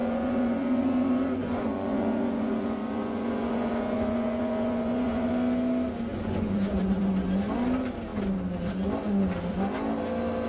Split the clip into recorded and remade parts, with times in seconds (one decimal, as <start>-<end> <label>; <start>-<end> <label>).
0.0-5.3 remade; 5.3-6.1 recorded; 6.1-7.0 remade; 7.0-10.5 recorded